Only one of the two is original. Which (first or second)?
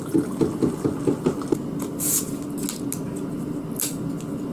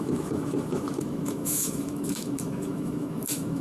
first